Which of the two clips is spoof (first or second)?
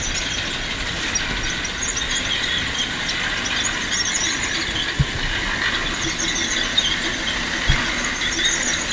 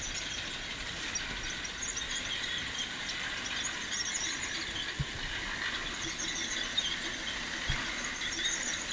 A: second